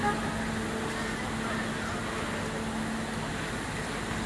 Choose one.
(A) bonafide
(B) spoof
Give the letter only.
A